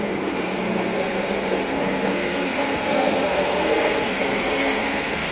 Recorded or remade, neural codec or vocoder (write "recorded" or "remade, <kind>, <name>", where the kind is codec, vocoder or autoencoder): remade, codec, SNAC